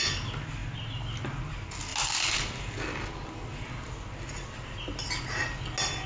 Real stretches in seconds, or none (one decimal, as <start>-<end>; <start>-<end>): 0.0-6.1